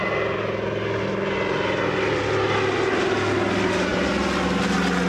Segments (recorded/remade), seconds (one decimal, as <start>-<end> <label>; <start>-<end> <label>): 0.0-5.1 recorded